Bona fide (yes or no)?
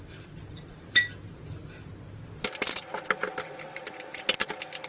yes